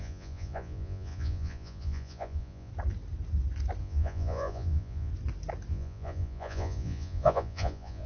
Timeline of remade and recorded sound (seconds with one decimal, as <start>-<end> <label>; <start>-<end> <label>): 0.0-2.7 remade; 2.7-3.8 recorded; 3.8-5.1 remade; 5.1-5.7 recorded; 5.7-8.1 remade